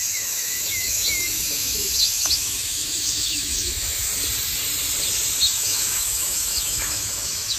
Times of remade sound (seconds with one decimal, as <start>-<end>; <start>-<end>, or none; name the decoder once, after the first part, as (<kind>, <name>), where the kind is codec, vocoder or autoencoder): 0.0-4.1 (autoencoder, DAC-VAE); 5.4-7.6